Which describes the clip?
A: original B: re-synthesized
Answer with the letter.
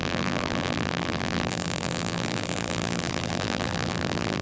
B